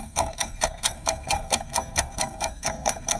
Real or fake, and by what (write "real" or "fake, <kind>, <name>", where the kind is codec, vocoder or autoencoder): fake, codec, SNAC